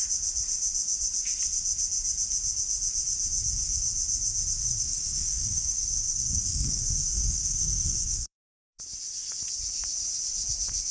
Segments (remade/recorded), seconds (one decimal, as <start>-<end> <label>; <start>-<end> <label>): 0.0-4.6 recorded; 4.6-8.8 remade; 8.8-10.9 recorded